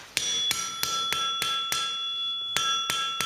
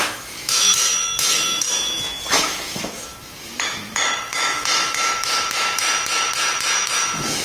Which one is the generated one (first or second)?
second